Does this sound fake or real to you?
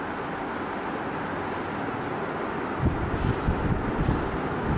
real